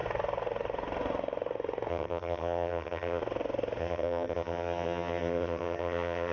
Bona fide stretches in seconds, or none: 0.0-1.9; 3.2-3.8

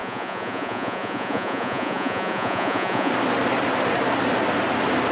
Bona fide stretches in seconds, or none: 3.1-5.1

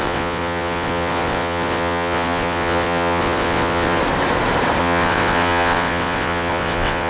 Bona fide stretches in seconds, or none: 4.0-4.8